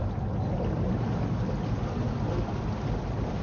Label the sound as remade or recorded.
recorded